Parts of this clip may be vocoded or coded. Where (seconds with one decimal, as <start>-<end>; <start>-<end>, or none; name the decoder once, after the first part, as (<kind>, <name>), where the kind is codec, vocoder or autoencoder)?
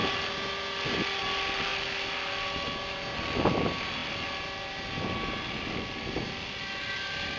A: none